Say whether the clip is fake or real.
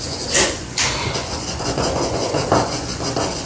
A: fake